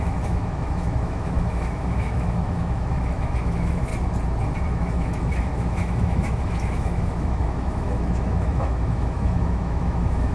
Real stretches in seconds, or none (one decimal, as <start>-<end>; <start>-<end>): 3.9-4.7